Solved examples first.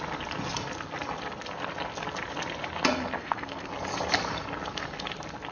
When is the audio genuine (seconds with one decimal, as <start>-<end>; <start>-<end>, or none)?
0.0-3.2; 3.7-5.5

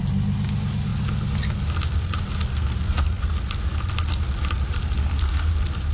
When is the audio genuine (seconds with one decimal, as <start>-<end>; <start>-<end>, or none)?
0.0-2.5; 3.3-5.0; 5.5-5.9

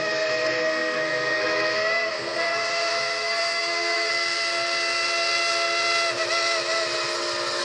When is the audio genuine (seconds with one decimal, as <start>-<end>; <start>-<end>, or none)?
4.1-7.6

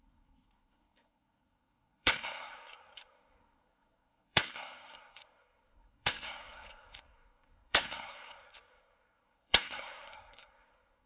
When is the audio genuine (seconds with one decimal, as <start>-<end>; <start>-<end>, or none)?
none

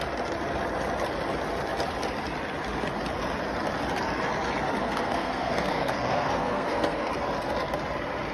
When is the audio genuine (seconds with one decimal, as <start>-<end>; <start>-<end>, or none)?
0.0-4.8; 7.1-8.3